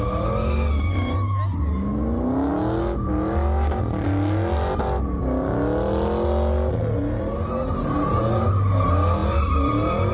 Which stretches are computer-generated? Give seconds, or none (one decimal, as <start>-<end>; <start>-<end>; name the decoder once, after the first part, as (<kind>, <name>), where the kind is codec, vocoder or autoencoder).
9.2-10.1 (vocoder, BigVGAN v2)